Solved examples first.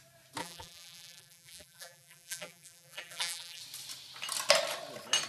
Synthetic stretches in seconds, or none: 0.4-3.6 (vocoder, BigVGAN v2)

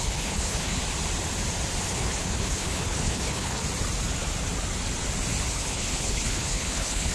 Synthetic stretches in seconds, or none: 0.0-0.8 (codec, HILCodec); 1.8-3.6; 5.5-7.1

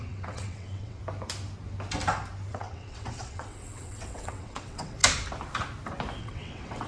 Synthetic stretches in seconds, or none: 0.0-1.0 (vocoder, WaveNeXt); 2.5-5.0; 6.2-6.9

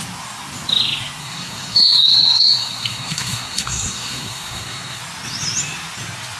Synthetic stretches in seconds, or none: 1.2-5.0 (codec, SNAC)